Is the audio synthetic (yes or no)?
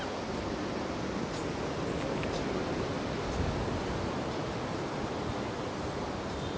no